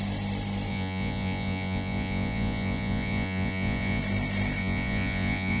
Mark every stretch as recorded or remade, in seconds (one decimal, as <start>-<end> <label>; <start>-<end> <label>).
0.0-0.7 recorded; 0.7-4.0 remade; 4.0-4.6 recorded; 4.6-5.6 remade